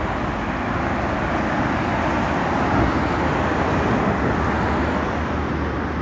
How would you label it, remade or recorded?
recorded